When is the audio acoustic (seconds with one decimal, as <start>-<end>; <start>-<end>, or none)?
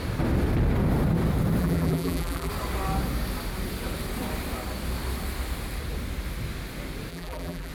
0.0-1.6; 2.5-7.1